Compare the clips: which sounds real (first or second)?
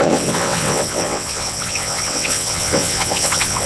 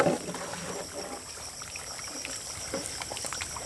second